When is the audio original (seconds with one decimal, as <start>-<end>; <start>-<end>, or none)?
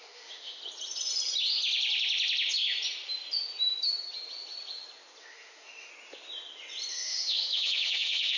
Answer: 0.6-5.2; 5.9-6.9